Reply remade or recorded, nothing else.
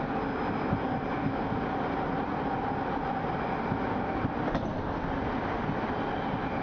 recorded